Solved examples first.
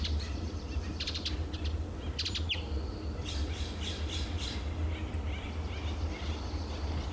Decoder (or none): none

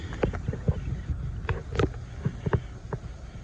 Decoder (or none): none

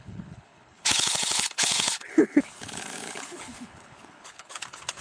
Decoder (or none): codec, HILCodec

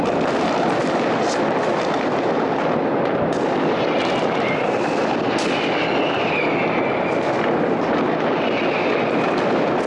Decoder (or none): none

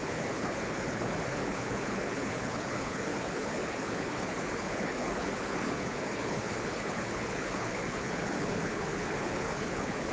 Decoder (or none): codec, HILCodec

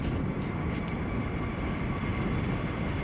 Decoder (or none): none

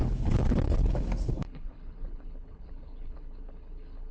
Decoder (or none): codec, HILCodec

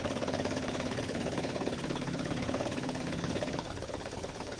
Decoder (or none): codec, HILCodec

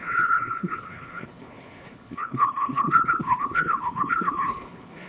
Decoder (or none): codec, HILCodec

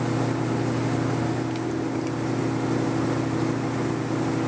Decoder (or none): none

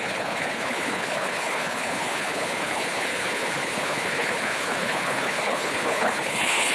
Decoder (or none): codec, HILCodec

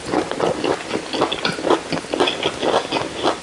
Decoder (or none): none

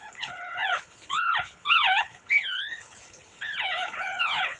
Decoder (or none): codec, HILCodec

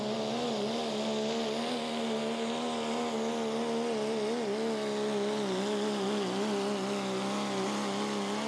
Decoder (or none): none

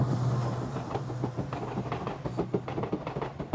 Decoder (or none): none